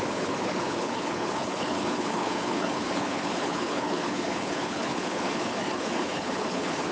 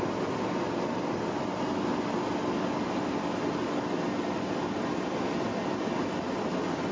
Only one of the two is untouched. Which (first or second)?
second